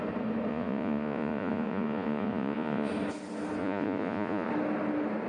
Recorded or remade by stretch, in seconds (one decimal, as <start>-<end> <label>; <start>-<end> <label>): 0.0-0.5 recorded; 0.5-2.9 remade; 2.9-3.6 recorded; 3.6-4.5 remade; 4.5-5.3 recorded